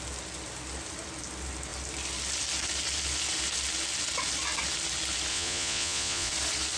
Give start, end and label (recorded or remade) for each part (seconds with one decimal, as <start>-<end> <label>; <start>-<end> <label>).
0.0-5.3 recorded; 5.3-6.3 remade; 6.3-6.8 recorded